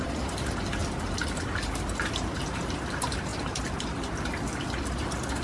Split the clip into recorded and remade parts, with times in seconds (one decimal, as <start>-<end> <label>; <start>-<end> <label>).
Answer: 0.0-0.8 remade; 0.8-1.4 recorded; 1.4-3.3 remade; 3.3-4.6 recorded; 4.6-5.4 remade